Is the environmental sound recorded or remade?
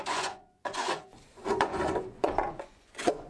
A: remade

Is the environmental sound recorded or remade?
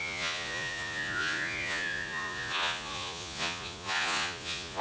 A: remade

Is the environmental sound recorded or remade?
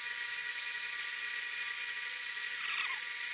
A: recorded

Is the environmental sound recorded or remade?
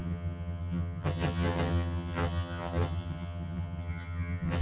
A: remade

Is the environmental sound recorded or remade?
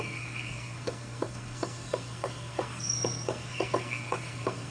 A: remade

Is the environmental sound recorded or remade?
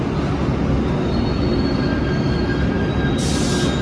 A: recorded